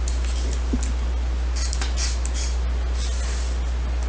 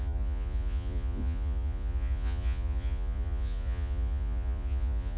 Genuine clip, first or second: first